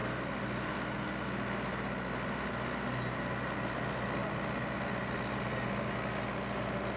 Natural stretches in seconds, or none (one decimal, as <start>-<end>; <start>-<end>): 0.0-7.0